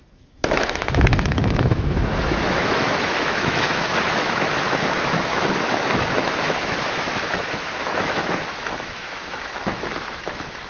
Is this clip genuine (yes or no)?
no